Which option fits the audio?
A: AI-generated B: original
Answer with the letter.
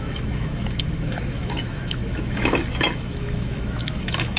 A